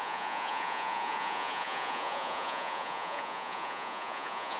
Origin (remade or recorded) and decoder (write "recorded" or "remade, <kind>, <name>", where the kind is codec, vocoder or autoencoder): remade, vocoder, Vocos